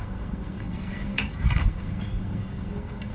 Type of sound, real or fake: fake